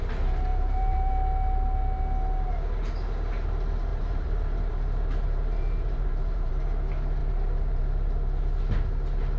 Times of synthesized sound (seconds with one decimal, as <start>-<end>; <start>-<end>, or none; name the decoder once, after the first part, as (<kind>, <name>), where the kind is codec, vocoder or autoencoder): 0.5-1.1 (vocoder, BigVGAN v2); 3.9-6.5; 7.2-7.8

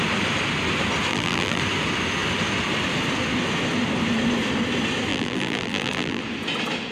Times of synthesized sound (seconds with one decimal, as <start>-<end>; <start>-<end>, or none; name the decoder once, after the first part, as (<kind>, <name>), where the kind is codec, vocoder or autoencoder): 1.1-1.6 (vocoder, BigVGAN v2); 5.1-6.2

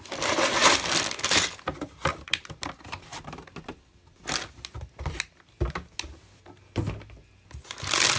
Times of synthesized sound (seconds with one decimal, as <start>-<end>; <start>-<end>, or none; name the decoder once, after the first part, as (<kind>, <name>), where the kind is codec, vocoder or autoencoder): none

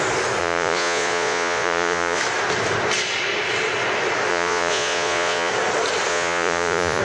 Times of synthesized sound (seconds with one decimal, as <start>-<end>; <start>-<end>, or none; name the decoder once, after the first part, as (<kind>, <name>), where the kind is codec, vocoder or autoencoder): 0.4-2.2 (vocoder, Vocos); 4.3-5.5; 6.1-7.0

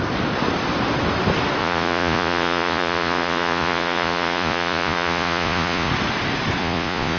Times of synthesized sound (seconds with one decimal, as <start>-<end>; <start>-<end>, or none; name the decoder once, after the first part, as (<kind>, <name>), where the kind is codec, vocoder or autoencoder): 1.6-5.9 (vocoder, Vocos); 6.6-7.2

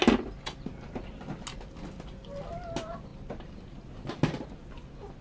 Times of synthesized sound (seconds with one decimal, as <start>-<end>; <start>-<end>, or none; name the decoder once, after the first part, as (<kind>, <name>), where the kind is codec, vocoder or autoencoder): none

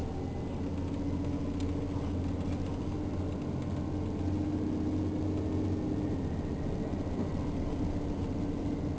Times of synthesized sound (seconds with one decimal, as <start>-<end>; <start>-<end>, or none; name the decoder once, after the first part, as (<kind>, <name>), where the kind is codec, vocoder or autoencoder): none